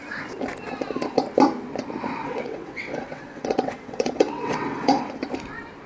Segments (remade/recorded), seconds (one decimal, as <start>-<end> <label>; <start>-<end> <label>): 0.0-2.2 recorded; 2.2-5.1 remade; 5.1-5.9 recorded